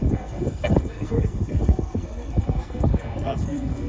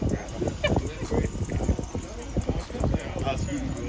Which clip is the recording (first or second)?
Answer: second